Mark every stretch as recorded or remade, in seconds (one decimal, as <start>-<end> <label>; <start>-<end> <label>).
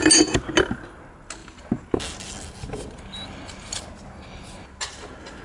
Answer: 0.0-5.4 recorded